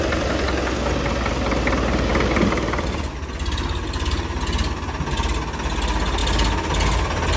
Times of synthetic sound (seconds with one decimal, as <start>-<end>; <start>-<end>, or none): none